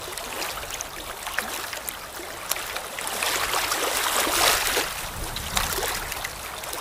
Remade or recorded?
recorded